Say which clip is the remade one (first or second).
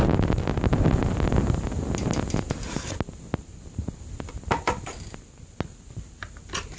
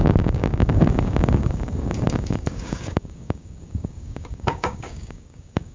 second